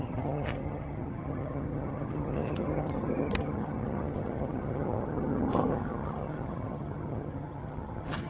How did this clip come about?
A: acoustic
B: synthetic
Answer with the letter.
B